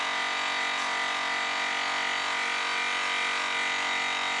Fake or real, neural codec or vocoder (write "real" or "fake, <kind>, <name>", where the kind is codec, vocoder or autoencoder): real